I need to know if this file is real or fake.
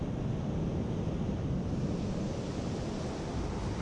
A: real